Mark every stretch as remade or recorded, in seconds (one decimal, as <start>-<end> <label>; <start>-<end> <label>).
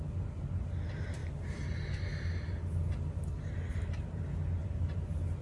0.0-5.4 recorded